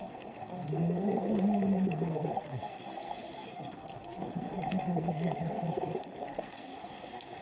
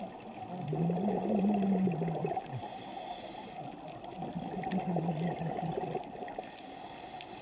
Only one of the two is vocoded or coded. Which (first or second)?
first